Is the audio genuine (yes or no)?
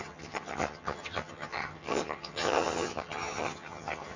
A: no